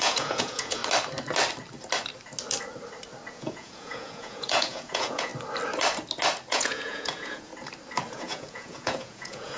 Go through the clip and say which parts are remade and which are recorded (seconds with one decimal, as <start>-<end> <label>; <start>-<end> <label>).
0.0-0.8 remade; 0.8-3.3 recorded; 3.3-5.3 remade; 5.3-6.5 recorded; 6.5-7.5 remade; 7.5-8.1 recorded; 8.1-9.6 remade